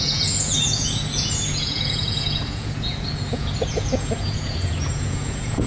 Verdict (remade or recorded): remade